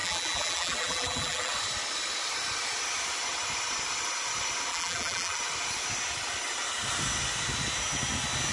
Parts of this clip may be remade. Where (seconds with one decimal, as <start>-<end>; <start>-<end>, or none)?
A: 0.0-1.5; 4.7-5.4